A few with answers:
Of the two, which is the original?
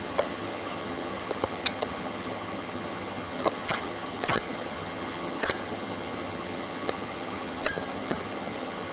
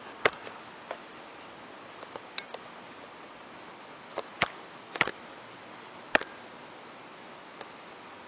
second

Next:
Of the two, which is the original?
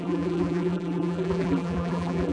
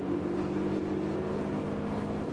second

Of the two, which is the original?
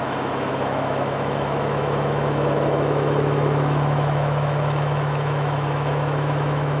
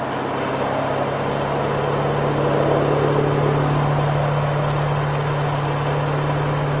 second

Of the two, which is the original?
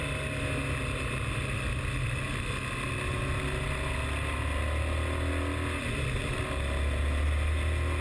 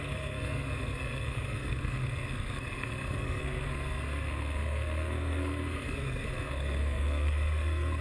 first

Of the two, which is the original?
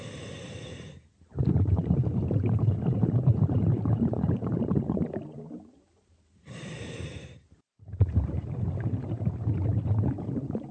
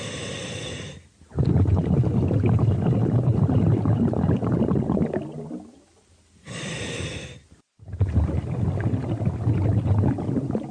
second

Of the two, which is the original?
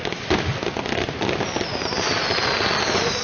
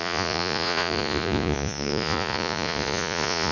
first